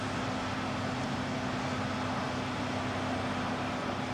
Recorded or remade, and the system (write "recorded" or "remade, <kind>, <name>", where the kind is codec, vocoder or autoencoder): recorded